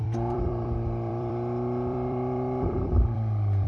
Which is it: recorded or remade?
remade